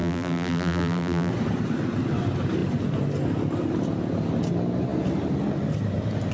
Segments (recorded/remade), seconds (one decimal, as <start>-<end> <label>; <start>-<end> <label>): 0.0-1.3 remade; 1.3-6.3 recorded